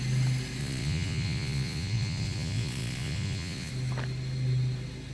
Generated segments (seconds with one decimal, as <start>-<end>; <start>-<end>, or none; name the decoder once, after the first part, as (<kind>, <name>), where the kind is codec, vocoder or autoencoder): 0.6-3.7 (vocoder, Vocos)